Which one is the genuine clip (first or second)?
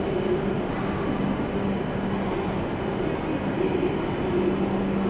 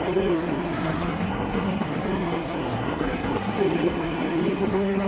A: first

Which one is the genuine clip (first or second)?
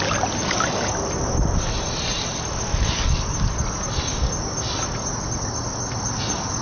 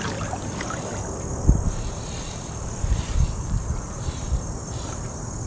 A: first